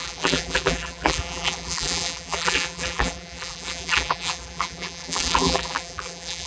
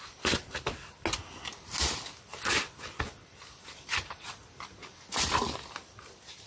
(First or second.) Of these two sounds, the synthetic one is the first